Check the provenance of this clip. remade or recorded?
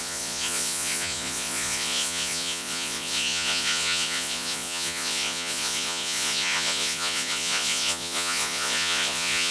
remade